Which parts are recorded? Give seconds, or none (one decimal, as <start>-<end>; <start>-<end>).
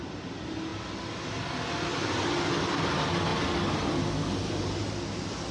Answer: 0.0-5.5